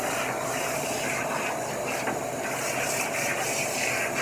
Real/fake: real